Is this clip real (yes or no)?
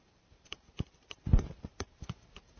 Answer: no